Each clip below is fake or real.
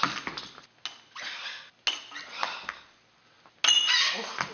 real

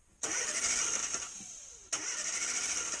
real